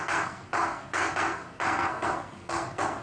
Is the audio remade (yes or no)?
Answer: yes